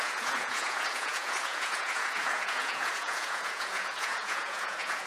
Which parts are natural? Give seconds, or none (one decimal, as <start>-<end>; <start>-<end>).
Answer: none